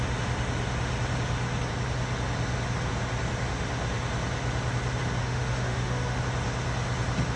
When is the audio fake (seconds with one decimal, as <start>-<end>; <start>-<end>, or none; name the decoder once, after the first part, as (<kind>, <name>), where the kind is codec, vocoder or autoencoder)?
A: 5.2-6.2 (autoencoder, DAC-VAE)